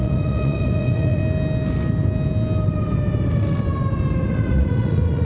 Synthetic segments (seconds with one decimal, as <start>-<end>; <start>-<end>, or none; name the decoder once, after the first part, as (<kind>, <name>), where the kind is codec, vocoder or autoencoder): 0.0-1.2 (vocoder, Vocos); 4.3-5.2